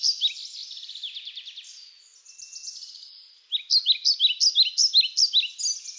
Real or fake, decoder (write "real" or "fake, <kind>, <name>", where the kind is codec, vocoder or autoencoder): real